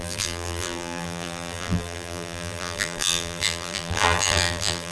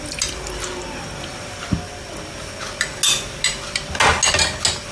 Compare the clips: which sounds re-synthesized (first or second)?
first